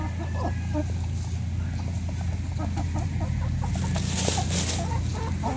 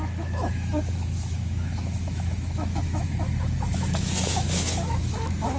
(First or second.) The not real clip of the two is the second